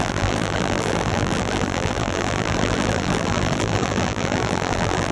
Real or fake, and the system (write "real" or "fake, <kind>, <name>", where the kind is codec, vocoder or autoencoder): fake, vocoder, BigVGAN v2